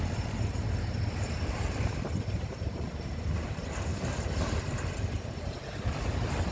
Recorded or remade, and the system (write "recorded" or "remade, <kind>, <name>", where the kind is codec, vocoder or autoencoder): remade, vocoder, BigVGAN v2